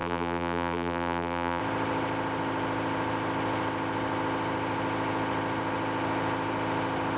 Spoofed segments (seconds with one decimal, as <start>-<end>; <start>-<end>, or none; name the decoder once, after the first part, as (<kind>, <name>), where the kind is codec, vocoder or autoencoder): 0.0-1.6 (vocoder, BigVGAN v2)